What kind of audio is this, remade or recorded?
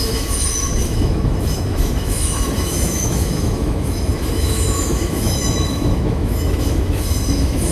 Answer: remade